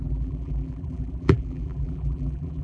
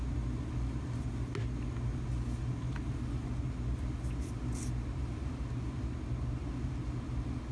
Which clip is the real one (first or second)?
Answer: second